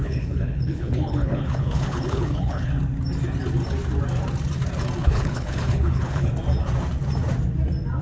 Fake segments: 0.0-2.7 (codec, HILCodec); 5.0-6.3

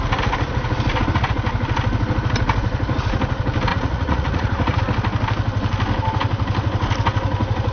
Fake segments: 3.7-4.8 (vocoder, Vocos)

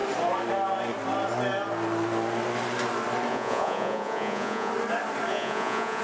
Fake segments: 3.3-4.7 (vocoder, Vocos); 5.3-6.0

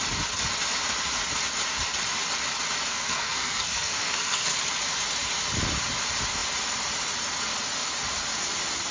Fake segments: 2.9-4.4 (codec, SNAC)

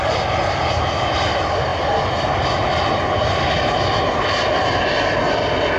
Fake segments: none

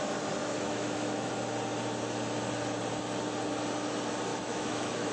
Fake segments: 0.4-1.3 (autoencoder, DAC-VAE); 4.3-5.1

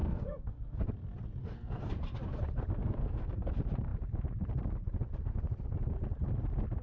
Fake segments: 0.0-0.9 (codec, SNAC); 1.4-1.9; 2.8-3.5

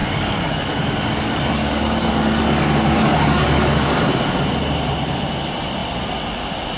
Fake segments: 0.0-4.0 (codec, DAC)